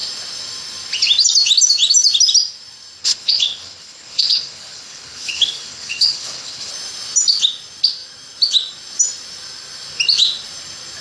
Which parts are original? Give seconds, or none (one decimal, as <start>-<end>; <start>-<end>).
0.0-3.0; 6.7-11.0